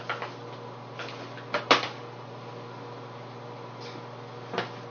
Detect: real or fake real